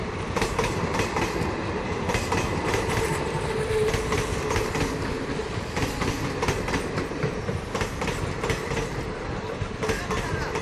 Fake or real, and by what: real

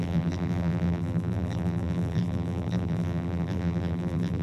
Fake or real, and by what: fake, vocoder, BigVGAN v2